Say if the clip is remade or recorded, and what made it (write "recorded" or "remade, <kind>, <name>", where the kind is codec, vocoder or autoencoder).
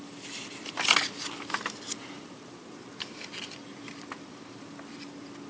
remade, vocoder, BigVGAN v2